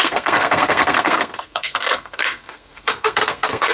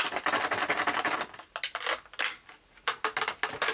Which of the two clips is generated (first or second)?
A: first